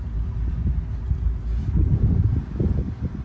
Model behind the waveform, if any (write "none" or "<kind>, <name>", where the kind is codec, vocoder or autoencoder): none